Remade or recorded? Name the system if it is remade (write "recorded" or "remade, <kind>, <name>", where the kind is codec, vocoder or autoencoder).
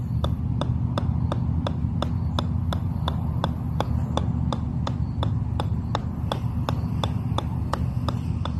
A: recorded